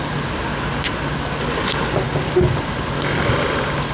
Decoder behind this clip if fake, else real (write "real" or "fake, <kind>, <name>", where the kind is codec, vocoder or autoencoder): real